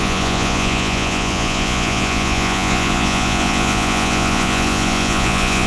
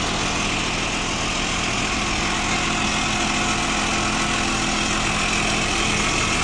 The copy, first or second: first